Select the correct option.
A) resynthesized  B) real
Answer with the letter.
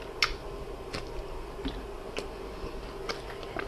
B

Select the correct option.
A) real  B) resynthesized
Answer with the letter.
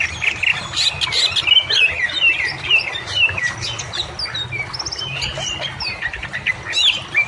A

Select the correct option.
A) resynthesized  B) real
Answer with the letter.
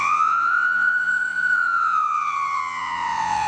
A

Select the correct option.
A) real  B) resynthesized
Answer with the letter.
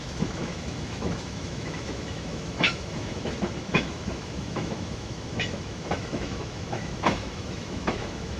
B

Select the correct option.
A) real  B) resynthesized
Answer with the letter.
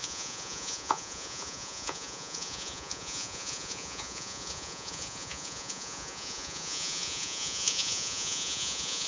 B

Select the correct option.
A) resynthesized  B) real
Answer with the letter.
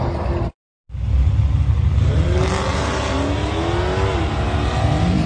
B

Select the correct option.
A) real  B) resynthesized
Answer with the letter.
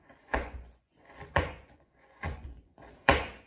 B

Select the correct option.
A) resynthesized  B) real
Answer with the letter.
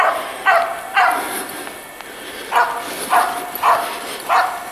B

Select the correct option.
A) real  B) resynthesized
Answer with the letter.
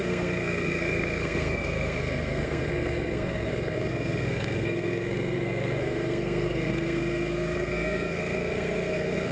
B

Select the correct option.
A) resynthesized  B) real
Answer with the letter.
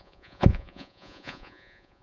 A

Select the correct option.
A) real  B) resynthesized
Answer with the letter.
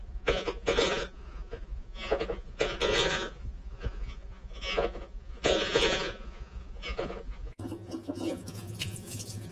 B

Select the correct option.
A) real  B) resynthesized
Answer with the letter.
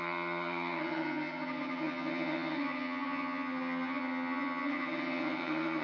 B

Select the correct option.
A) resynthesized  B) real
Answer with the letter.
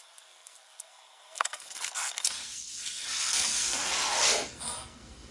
A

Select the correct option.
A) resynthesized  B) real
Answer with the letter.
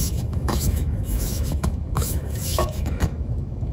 A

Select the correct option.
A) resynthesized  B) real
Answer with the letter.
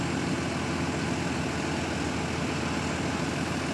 B